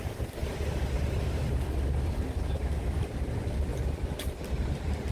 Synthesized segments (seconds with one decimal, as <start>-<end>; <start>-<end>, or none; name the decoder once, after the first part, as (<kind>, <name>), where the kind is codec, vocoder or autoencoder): 0.0-3.7 (vocoder, BigVGAN v2); 4.5-5.1